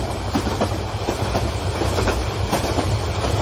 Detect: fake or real fake